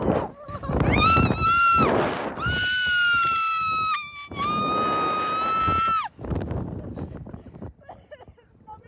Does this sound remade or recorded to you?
recorded